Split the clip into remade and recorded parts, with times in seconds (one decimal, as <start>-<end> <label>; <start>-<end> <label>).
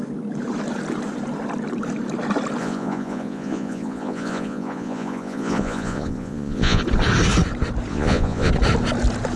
0.0-2.6 recorded; 2.6-6.8 remade; 6.8-7.9 recorded; 7.9-8.5 remade; 8.5-9.4 recorded